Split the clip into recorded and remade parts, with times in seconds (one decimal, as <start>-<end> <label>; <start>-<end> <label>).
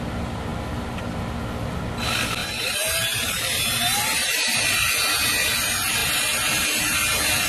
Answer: 0.0-2.4 recorded; 2.4-5.0 remade; 5.0-6.0 recorded; 6.0-6.6 remade; 6.6-7.5 recorded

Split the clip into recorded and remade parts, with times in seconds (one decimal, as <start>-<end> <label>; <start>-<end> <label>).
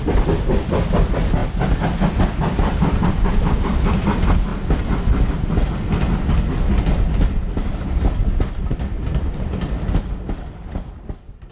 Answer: 0.0-1.4 remade; 1.4-2.1 recorded; 2.1-4.5 remade; 4.5-8.5 recorded; 8.5-11.5 remade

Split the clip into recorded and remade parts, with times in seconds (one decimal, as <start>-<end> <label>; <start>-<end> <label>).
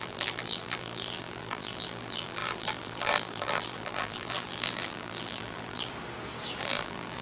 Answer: 0.0-5.9 remade; 5.9-6.6 recorded; 6.6-7.2 remade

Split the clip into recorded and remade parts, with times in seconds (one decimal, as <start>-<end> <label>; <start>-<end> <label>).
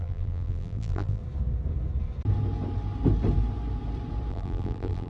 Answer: 0.0-1.2 remade; 1.2-4.3 recorded; 4.3-5.1 remade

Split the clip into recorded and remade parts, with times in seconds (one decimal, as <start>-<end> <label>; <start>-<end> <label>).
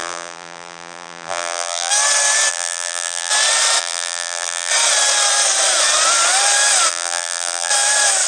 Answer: 0.0-1.9 remade; 1.9-2.5 recorded; 2.5-3.3 remade; 3.3-3.8 recorded; 3.8-4.7 remade; 4.7-6.9 recorded; 6.9-7.7 remade; 7.7-8.3 recorded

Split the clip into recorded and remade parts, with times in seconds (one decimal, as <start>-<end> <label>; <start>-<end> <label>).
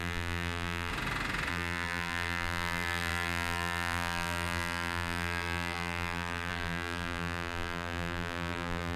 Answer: 0.0-0.9 remade; 0.9-1.5 recorded; 1.5-9.0 remade